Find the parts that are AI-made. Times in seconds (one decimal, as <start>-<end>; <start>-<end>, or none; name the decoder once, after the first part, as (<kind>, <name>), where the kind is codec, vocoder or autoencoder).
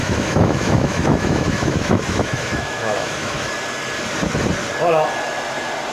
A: 0.0-3.5 (autoencoder, DAC-VAE)